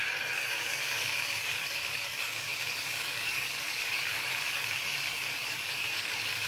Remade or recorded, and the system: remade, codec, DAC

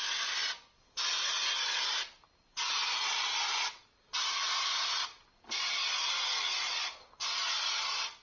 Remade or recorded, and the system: recorded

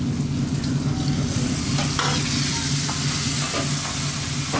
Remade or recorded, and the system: recorded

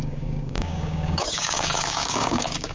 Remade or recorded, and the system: remade, codec, DAC